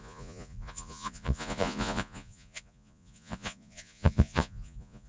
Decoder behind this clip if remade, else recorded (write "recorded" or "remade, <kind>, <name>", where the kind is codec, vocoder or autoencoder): remade, vocoder, Vocos